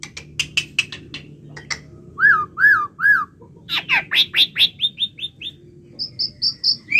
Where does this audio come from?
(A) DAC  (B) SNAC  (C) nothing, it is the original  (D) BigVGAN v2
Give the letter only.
C